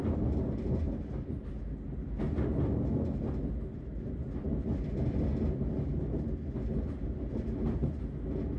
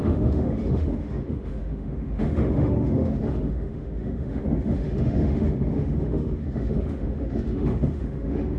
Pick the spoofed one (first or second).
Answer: second